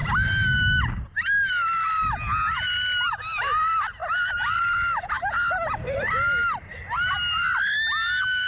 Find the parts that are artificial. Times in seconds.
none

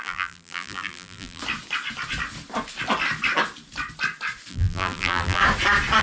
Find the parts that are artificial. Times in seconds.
0.0-1.4 (vocoder, BigVGAN v2); 4.5-5.4

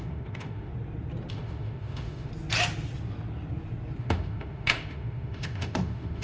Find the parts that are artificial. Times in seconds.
0.0-0.7 (autoencoder, DAC-VAE); 1.3-2.3; 4.0-6.2

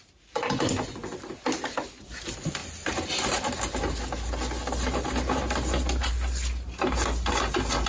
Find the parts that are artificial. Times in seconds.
none

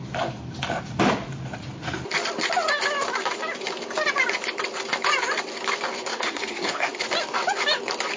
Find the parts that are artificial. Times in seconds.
6.1-6.9 (codec, SNAC)

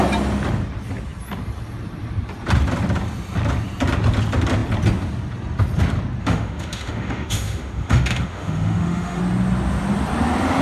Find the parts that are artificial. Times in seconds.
6.2-9.2 (autoencoder, DAC-VAE)

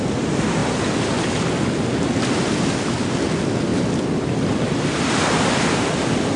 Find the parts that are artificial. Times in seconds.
none